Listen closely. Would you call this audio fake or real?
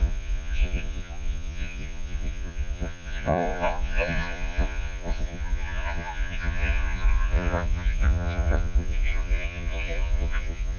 fake